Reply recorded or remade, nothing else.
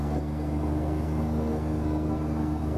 remade